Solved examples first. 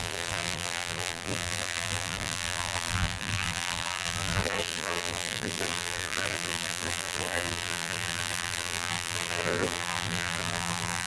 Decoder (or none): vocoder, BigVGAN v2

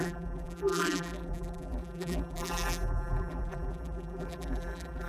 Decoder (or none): vocoder, BigVGAN v2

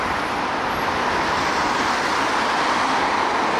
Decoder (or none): none